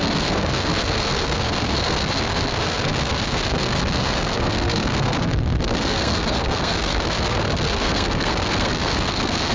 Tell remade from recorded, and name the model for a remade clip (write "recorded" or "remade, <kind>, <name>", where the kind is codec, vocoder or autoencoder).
remade, codec, SNAC